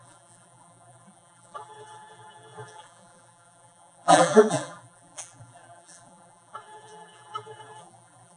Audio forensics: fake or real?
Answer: fake